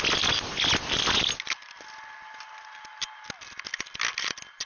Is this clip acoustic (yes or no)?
yes